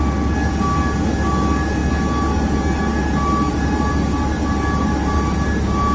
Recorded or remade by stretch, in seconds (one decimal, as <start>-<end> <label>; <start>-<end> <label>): 0.0-5.9 recorded